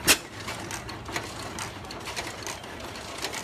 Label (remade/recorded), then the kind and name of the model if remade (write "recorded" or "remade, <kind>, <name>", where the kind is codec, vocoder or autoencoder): recorded